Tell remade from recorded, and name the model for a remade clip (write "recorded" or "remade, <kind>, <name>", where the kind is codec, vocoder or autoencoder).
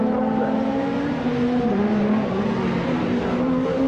remade, vocoder, BigVGAN v2